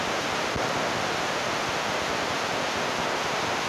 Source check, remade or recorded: recorded